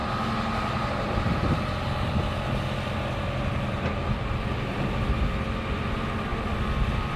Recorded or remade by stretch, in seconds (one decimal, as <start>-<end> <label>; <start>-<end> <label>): 0.0-7.2 recorded

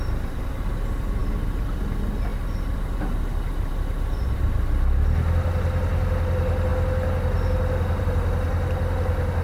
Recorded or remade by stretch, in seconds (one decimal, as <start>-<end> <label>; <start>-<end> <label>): 0.0-9.4 recorded

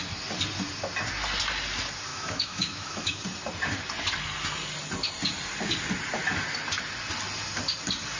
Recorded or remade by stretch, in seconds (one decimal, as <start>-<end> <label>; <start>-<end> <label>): 0.0-2.1 recorded; 2.1-3.2 remade; 3.2-8.2 recorded

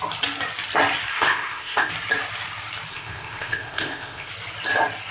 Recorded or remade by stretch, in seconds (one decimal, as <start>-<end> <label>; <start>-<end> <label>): 0.0-1.1 recorded; 1.1-1.9 remade; 1.9-2.9 recorded; 2.9-4.3 remade; 4.3-5.1 recorded

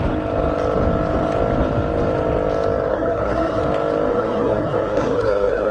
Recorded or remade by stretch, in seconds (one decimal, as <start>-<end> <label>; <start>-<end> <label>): 0.0-2.9 recorded; 2.9-3.6 remade; 3.6-4.1 recorded; 4.1-5.7 remade

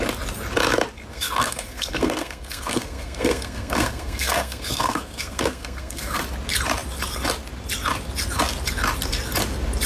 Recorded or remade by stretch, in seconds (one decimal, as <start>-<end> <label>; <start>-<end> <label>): 0.0-1.1 recorded; 1.1-6.2 remade; 6.2-9.9 recorded